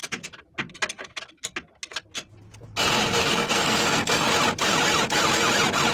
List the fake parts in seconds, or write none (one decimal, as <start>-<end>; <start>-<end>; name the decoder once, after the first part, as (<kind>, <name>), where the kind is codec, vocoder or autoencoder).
3.2-4.3 (codec, SNAC)